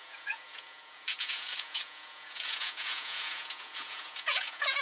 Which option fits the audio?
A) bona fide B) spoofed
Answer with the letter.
B